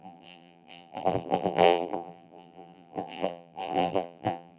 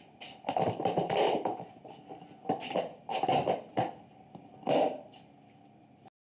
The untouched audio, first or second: second